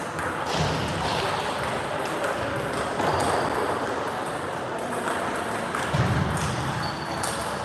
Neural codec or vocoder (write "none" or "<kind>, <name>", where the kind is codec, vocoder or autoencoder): none